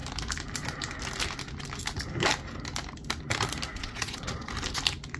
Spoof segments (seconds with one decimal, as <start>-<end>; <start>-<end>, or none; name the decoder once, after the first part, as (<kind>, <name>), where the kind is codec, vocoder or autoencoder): 3.7-4.5 (vocoder, Vocos)